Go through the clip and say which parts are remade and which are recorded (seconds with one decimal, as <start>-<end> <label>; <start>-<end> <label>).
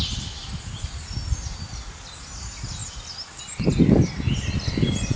0.0-5.2 recorded